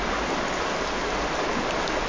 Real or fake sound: real